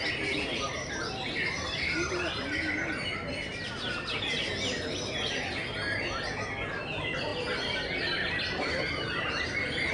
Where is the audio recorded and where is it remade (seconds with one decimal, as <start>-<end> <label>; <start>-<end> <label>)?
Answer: 0.0-9.9 recorded